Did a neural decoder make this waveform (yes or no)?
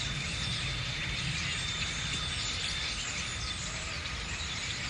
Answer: yes